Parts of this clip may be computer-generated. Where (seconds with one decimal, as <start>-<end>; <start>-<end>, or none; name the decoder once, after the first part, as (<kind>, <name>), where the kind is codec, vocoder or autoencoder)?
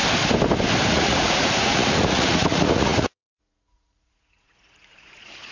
0.9-5.5 (vocoder, Vocos)